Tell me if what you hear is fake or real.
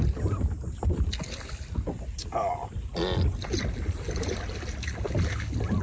real